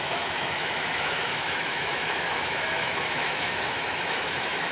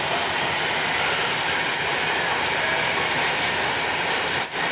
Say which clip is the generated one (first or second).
first